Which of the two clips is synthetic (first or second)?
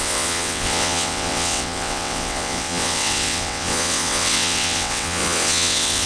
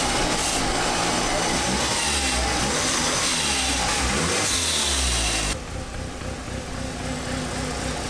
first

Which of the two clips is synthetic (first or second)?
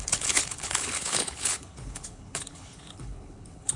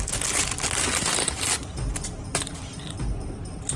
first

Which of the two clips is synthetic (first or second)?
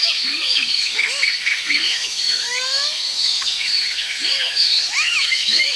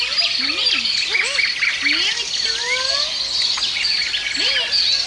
first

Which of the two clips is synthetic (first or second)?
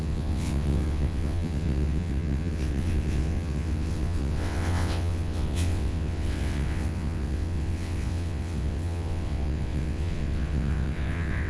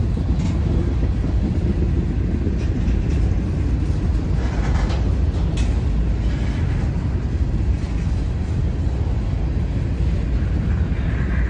first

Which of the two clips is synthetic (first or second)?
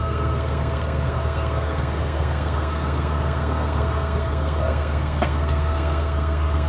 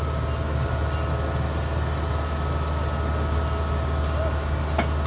first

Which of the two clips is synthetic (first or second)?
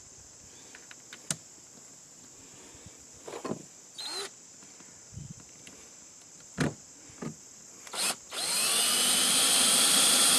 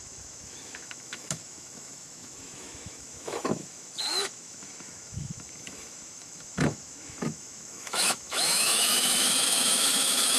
second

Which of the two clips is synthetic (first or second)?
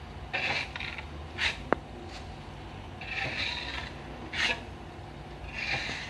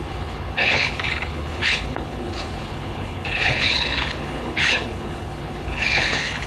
second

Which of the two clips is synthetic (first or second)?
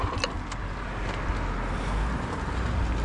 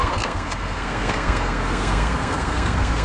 second